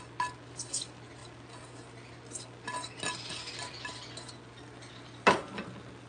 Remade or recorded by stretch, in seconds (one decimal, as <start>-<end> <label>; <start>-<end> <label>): 0.0-6.1 recorded

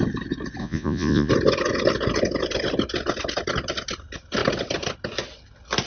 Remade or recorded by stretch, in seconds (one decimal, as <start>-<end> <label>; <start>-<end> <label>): 0.0-0.6 recorded; 0.6-1.3 remade; 1.3-5.9 recorded

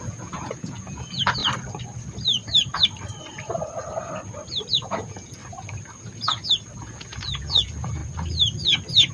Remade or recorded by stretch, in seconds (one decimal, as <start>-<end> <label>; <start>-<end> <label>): 0.0-1.4 remade; 1.4-4.7 recorded; 4.7-5.4 remade; 5.4-6.8 recorded; 6.8-8.0 remade; 8.0-9.1 recorded

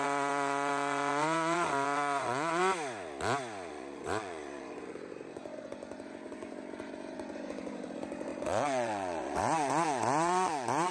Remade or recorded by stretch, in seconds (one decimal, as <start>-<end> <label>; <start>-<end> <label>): 0.0-2.6 remade; 2.6-3.7 recorded; 3.7-10.9 remade

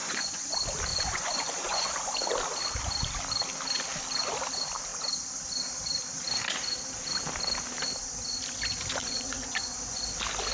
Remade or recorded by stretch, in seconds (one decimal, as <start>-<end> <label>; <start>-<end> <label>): 0.0-0.5 remade; 0.5-0.9 recorded; 0.9-1.9 remade; 1.9-9.0 recorded; 9.0-10.0 remade; 10.0-10.5 recorded

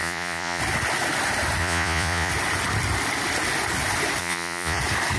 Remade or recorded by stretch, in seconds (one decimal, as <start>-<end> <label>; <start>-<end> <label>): 0.0-0.6 remade; 0.6-1.6 recorded; 1.6-2.3 remade; 2.3-4.2 recorded; 4.2-4.8 remade; 4.8-5.2 recorded

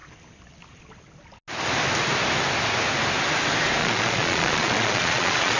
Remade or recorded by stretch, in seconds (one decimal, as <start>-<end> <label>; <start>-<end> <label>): 0.0-3.8 recorded; 3.8-5.6 remade

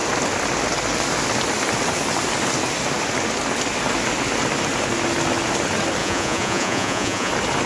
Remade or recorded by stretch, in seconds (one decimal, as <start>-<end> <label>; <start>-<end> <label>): 0.0-6.0 recorded; 6.0-7.3 remade; 7.3-7.7 recorded